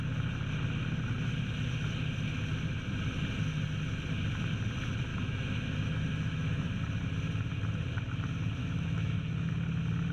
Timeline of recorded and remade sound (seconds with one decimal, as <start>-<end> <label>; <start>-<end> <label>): 0.0-5.1 recorded; 5.1-6.8 remade; 6.8-8.6 recorded; 8.6-9.5 remade; 9.5-10.1 recorded